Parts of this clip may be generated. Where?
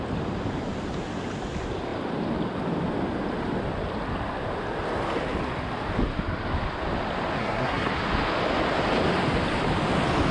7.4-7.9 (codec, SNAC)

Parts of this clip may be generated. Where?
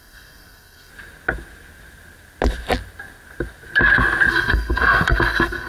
0.0-0.9 (codec, SNAC); 4.3-5.7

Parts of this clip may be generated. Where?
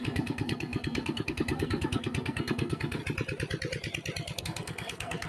0.0-3.0 (codec, SNAC); 4.4-5.3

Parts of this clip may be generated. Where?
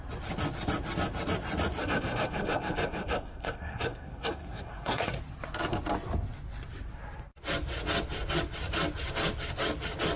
1.8-5.2 (codec, SNAC)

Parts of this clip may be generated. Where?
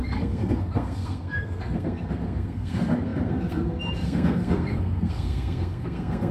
0.0-6.3 (codec, SNAC)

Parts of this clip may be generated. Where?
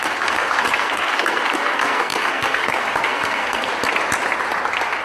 0.0-3.7 (codec, SNAC)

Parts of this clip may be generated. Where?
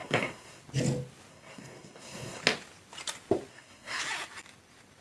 0.0-0.6 (codec, SNAC); 1.3-2.4; 3.5-4.0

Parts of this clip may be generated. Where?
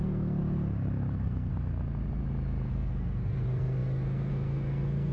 0.0-0.4 (codec, SNAC); 1.1-1.5; 2.7-5.1